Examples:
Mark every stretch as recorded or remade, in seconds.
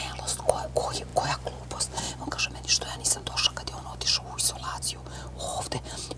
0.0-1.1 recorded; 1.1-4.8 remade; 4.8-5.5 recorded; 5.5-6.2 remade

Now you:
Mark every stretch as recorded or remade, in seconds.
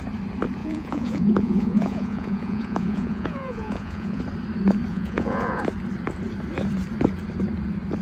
0.0-0.6 recorded; 0.6-4.2 remade; 4.2-4.9 recorded; 4.9-5.6 remade; 5.6-8.0 recorded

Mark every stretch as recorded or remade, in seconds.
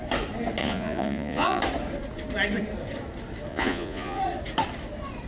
0.0-0.6 recorded; 0.6-1.6 remade; 1.6-3.5 recorded; 3.5-4.2 remade; 4.2-5.3 recorded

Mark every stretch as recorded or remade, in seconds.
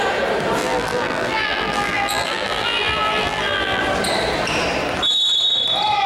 0.0-0.6 recorded; 0.6-3.8 remade; 3.8-6.1 recorded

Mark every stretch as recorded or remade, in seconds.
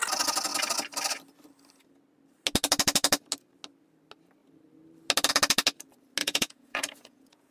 0.0-6.2 recorded; 6.2-7.5 remade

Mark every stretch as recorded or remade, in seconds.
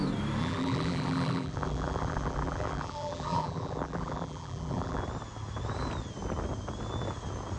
0.0-0.4 recorded; 0.4-5.0 remade; 5.0-7.6 recorded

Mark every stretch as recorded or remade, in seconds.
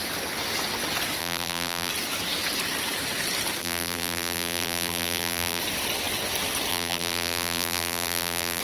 0.0-1.2 recorded; 1.2-1.9 remade; 1.9-3.6 recorded; 3.6-5.6 remade; 5.6-6.7 recorded; 6.7-8.6 remade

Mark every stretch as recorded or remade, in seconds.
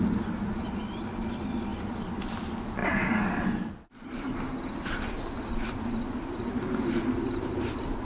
0.0-8.0 recorded